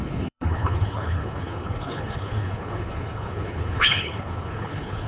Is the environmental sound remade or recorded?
remade